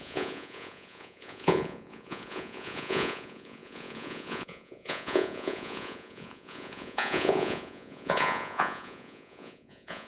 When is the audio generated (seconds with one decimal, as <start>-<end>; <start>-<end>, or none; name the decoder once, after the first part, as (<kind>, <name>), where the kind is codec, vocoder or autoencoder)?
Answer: 0.0-10.1 (vocoder, Vocos)